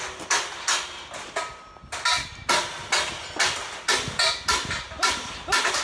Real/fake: real